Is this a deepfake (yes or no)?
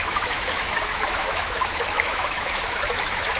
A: yes